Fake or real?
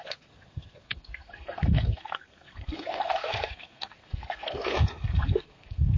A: fake